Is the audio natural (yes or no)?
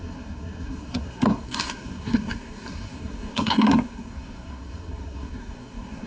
no